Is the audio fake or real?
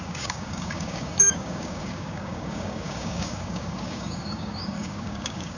fake